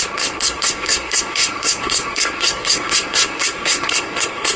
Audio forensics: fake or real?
fake